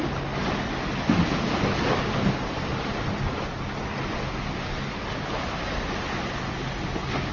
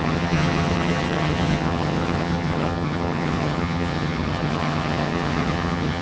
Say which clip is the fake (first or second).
second